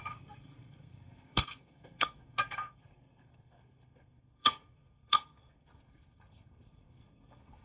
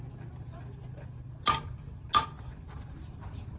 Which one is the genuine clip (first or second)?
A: second